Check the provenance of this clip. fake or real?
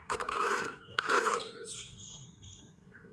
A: fake